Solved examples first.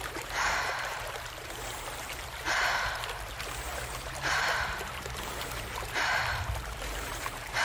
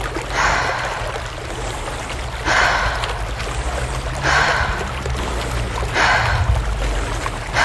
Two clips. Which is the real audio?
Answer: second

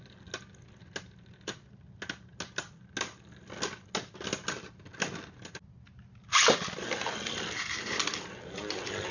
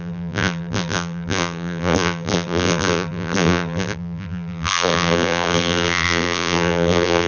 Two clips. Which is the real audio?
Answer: first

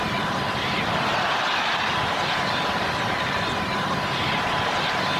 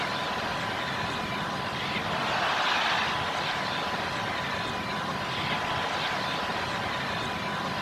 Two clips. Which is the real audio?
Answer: second